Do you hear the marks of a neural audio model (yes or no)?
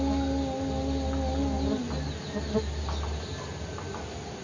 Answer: no